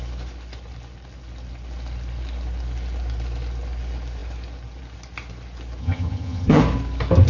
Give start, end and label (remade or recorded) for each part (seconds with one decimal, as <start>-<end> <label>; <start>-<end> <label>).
0.0-5.8 recorded; 5.8-6.6 remade; 6.6-7.3 recorded

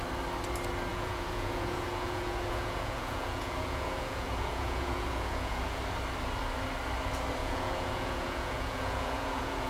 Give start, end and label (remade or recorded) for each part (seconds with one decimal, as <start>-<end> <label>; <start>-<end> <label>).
0.0-0.9 recorded; 0.9-5.8 remade; 5.8-7.4 recorded; 7.4-9.7 remade

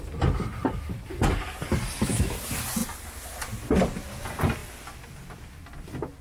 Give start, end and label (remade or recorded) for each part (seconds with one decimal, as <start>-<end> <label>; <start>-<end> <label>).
0.0-6.2 recorded

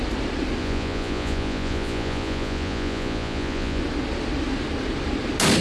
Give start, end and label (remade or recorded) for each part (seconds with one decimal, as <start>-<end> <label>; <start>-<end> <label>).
0.0-0.6 recorded; 0.6-3.8 remade; 3.8-5.6 recorded

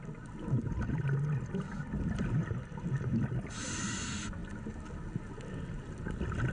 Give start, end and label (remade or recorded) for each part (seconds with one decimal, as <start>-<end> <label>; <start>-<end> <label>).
0.0-6.5 recorded